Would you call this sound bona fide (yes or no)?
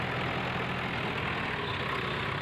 yes